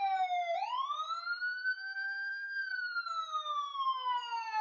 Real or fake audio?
fake